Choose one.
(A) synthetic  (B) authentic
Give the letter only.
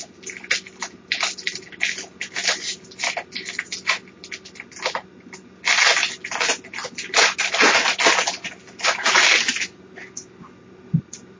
B